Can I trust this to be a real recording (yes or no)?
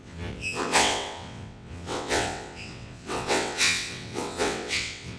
no